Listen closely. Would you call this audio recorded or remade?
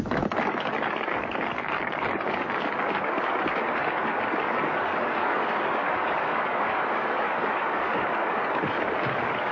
remade